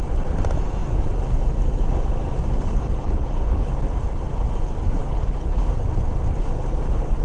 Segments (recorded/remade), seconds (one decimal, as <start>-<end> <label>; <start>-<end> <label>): 0.0-2.5 recorded; 2.5-3.7 remade; 3.7-5.0 recorded; 5.0-5.6 remade; 5.6-7.2 recorded